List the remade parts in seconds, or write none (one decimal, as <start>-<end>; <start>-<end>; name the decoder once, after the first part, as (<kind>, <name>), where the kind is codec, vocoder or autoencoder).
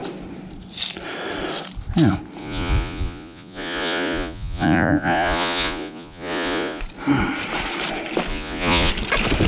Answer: 2.4-6.8 (vocoder, Vocos); 8.3-8.9